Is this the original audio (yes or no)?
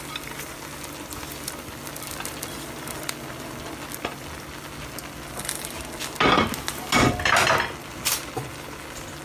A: yes